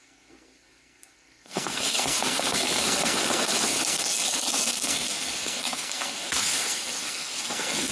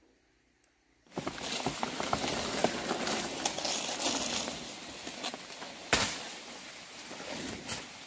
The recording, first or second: second